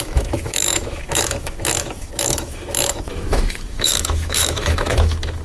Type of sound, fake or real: fake